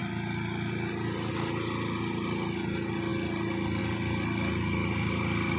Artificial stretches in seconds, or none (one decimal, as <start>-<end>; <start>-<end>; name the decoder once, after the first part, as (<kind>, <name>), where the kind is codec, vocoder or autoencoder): none